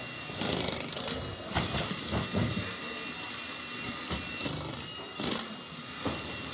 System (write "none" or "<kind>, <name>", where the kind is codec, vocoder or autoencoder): none